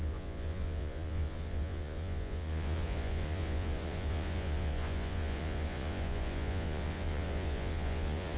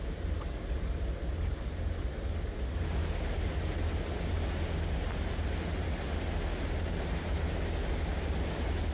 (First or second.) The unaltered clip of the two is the second